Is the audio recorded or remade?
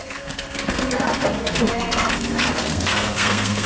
remade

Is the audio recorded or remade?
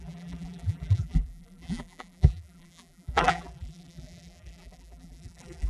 remade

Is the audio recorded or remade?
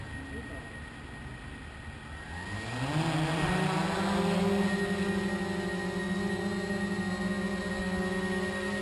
recorded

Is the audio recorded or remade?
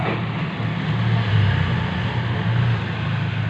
recorded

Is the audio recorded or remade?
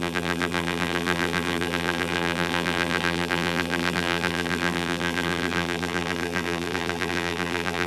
remade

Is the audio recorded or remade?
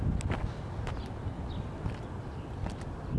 recorded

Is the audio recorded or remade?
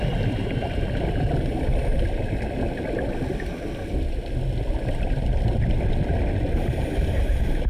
recorded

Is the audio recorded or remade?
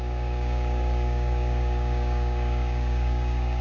remade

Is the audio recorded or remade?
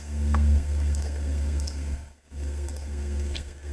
remade